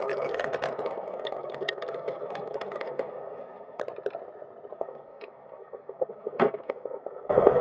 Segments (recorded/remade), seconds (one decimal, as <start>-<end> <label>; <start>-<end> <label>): 0.0-3.8 remade; 3.8-4.7 recorded; 4.7-7.6 remade

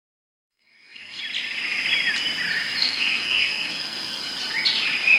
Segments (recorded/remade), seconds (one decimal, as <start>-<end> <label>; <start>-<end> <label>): 0.0-0.4 recorded; 0.4-1.2 remade; 1.2-2.8 recorded; 2.8-4.2 remade; 4.2-5.2 recorded

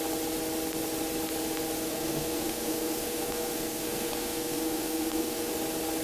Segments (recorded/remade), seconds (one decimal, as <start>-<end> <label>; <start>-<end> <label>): 0.0-1.9 recorded; 1.9-5.5 remade; 5.5-6.0 recorded

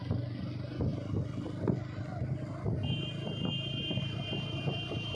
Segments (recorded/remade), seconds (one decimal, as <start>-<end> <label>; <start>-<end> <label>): 0.0-5.1 recorded

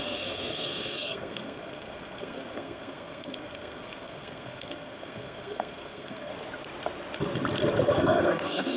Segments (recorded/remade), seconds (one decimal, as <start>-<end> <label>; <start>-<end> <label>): 0.0-6.3 remade; 6.3-8.0 recorded; 8.0-8.8 remade